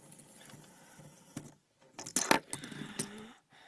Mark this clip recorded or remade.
recorded